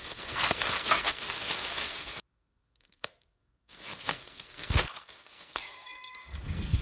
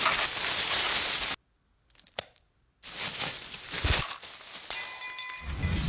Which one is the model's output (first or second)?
first